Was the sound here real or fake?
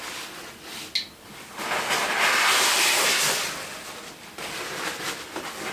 real